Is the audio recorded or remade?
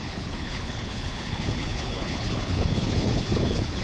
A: remade